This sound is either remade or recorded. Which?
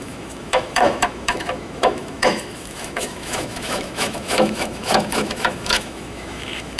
remade